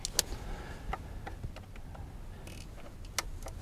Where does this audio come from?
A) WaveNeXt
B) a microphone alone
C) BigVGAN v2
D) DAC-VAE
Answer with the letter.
B